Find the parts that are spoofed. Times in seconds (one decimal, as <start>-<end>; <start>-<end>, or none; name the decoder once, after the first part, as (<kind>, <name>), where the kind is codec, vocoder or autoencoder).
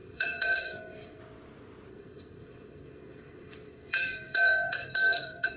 0.0-1.2 (codec, SNAC); 1.9-5.6